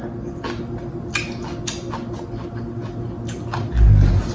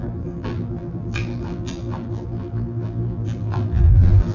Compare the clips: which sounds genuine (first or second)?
first